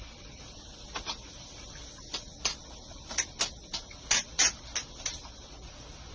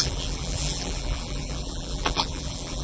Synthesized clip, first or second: second